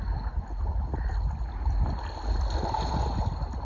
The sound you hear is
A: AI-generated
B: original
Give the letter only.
B